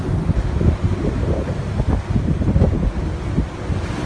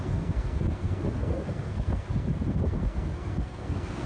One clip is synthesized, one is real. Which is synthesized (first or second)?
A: second